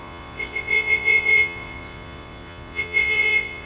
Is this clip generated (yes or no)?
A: yes